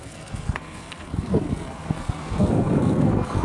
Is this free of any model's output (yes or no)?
no